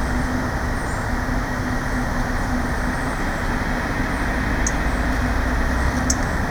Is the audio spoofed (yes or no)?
no